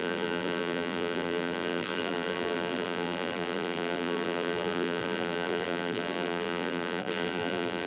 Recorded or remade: remade